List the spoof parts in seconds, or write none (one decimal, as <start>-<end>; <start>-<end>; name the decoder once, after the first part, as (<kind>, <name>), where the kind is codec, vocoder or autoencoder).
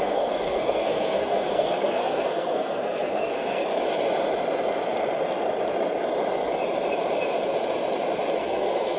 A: 0.0-3.6 (codec, SNAC); 8.4-9.0